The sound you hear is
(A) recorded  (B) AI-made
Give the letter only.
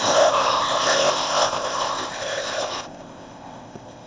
B